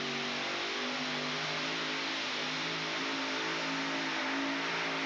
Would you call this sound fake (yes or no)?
no